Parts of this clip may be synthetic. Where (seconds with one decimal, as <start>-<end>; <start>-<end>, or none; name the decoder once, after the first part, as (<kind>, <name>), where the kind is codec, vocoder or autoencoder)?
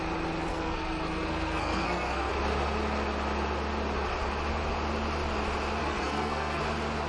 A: 0.5-2.3 (codec, SNAC); 5.8-6.6